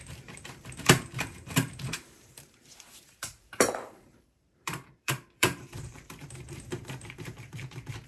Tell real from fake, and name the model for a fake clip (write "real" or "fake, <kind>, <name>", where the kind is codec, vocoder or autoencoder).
fake, vocoder, BigVGAN v2